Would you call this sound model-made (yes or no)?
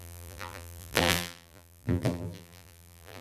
yes